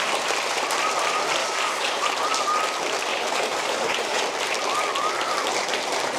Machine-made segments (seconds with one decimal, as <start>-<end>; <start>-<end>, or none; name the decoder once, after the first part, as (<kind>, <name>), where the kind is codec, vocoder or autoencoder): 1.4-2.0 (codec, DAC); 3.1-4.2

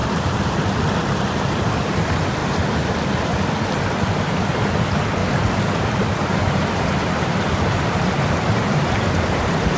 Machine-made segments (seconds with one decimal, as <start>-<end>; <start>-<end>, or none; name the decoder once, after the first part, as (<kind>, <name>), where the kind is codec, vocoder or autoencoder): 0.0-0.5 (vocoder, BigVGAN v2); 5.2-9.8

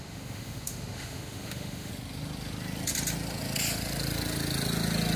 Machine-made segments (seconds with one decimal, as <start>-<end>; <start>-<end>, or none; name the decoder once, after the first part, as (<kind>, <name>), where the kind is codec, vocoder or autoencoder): 0.0-1.9 (autoencoder, DAC-VAE)

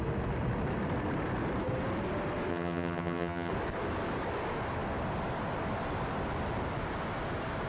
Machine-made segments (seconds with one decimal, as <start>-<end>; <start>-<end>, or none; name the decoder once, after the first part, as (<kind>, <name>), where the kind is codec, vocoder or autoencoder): 2.5-3.5 (vocoder, HiFi-GAN)

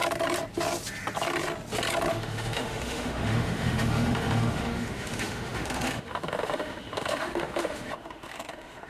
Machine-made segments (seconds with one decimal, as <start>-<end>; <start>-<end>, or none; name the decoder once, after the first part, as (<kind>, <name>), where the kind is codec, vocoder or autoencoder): 2.1-8.9 (autoencoder, DAC-VAE)

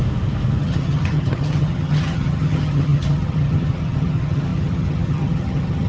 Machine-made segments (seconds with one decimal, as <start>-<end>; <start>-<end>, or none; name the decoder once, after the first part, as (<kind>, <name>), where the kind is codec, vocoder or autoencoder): 0.6-5.9 (vocoder, HiFi-GAN)

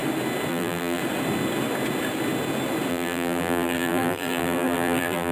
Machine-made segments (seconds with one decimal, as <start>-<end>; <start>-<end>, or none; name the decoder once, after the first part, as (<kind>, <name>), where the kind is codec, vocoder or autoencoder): 0.5-1.0 (vocoder, BigVGAN v2); 2.9-5.3